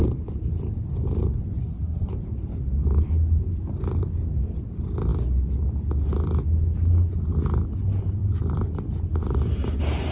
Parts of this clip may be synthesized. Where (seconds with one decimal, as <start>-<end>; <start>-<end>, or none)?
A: 1.6-2.1